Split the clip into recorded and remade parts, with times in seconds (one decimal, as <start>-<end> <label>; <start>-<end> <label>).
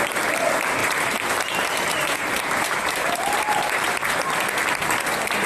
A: 0.0-0.8 recorded; 0.8-4.1 remade; 4.1-5.5 recorded